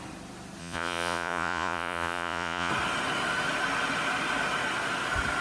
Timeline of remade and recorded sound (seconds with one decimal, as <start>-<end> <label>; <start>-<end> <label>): 0.0-0.6 recorded; 0.6-2.7 remade; 2.7-5.4 recorded